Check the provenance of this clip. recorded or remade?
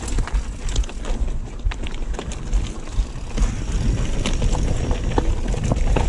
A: recorded